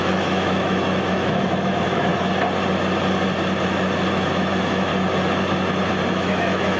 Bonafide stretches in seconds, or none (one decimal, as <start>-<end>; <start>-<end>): 2.1-4.1; 4.9-6.1

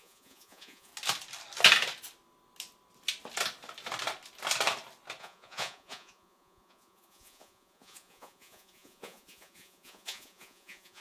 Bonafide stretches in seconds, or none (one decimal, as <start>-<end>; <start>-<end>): 0.9-5.2

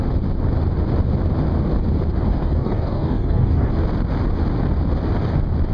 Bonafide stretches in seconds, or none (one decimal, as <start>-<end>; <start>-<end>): 0.0-2.3; 3.7-5.7

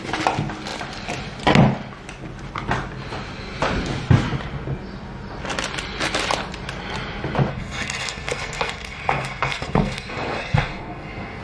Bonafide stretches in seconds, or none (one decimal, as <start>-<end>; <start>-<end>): 0.0-7.5